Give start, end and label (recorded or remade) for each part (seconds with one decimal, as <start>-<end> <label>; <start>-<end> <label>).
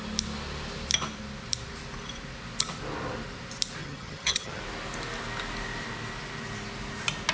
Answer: 0.0-3.8 recorded; 3.8-4.6 remade; 4.6-7.3 recorded